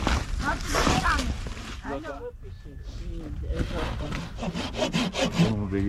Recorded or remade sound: recorded